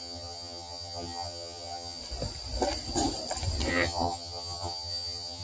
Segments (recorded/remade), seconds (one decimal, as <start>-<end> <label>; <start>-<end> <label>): 0.0-2.0 remade; 2.0-3.7 recorded; 3.7-5.4 remade